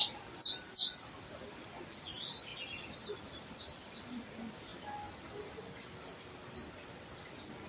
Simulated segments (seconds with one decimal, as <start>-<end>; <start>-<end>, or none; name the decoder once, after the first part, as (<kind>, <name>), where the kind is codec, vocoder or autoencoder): 0.5-7.7 (vocoder, BigVGAN v2)